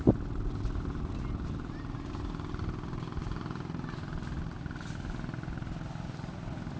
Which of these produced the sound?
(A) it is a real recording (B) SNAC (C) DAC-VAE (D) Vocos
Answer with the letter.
A